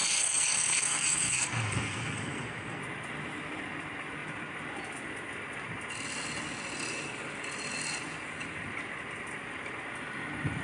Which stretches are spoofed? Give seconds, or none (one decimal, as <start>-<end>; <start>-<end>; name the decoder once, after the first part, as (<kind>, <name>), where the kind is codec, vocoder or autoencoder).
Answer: 0.0-2.8 (codec, SNAC)